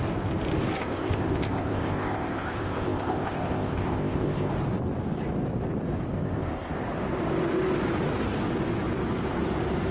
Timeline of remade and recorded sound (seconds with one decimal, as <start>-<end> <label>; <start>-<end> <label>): 0.0-0.8 recorded; 0.8-4.5 remade; 4.5-6.1 recorded; 6.1-6.7 remade; 6.7-9.9 recorded